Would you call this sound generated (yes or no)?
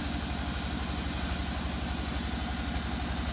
no